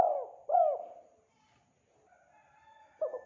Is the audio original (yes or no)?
yes